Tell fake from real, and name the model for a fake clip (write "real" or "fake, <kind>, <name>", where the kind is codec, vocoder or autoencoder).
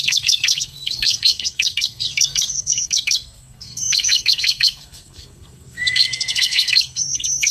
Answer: fake, codec, SNAC